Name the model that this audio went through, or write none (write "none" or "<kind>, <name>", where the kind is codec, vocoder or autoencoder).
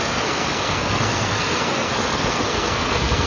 codec, SNAC